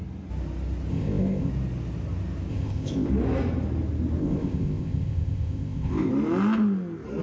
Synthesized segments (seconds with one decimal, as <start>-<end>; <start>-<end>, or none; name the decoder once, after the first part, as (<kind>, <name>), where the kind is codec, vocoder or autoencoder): 0.9-1.5 (codec, ZipCodec); 2.5-3.1; 4.2-6.1